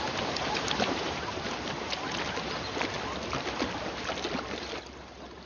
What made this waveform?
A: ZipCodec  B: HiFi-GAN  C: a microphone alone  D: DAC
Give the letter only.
C